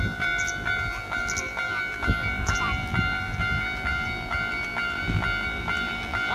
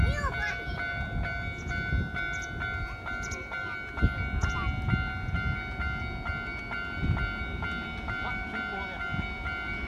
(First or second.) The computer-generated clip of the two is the first